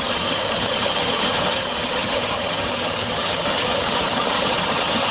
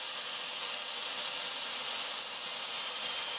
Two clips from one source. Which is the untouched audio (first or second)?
second